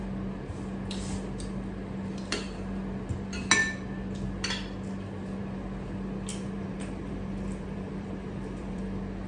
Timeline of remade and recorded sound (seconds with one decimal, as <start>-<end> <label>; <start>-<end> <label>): 0.0-6.3 recorded; 6.3-8.8 remade; 8.8-9.3 recorded